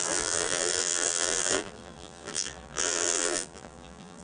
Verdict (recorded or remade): remade